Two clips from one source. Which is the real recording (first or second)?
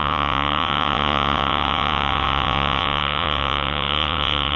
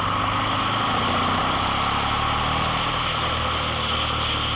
second